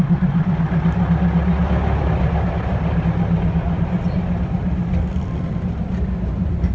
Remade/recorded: recorded